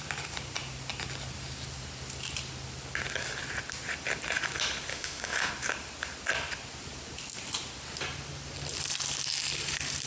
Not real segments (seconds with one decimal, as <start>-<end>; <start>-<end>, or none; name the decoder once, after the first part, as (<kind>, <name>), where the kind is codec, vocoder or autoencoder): 4.9-5.5 (autoencoder, DAC-VAE)